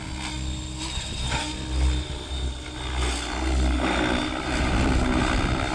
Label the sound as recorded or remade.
recorded